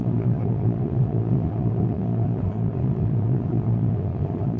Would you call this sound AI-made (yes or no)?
yes